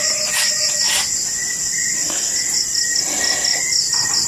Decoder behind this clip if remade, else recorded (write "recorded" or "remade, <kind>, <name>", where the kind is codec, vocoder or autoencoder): recorded